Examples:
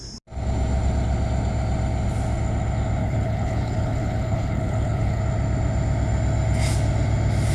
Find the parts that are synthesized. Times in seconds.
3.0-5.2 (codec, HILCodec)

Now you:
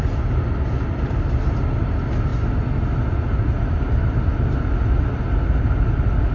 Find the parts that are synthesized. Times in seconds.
none